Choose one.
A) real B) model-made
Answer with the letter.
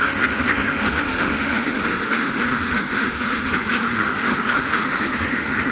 B